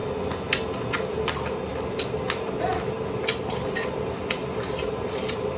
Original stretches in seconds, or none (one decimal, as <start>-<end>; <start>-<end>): 0.0-4.4